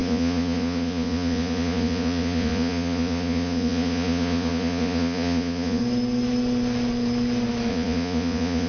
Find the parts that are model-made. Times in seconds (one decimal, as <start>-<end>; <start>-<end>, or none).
0.0-5.8; 7.7-8.7